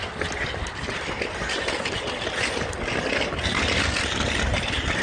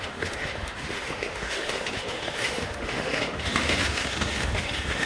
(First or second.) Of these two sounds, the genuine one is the first